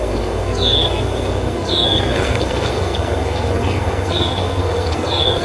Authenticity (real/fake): fake